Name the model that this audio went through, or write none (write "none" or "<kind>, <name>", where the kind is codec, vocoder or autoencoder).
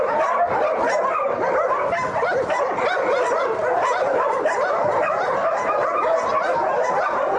none